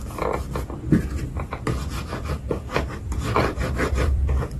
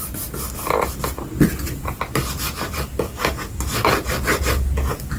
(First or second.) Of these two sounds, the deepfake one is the first